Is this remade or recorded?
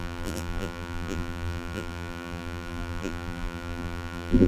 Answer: remade